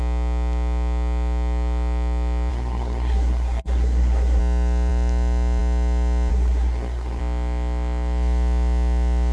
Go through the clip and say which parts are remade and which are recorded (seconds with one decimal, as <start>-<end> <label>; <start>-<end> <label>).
0.0-2.5 recorded; 2.5-4.4 remade; 4.4-6.3 recorded; 6.3-7.2 remade; 7.2-9.3 recorded